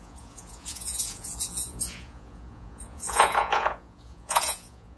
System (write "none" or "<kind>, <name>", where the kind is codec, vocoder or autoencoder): vocoder, Vocos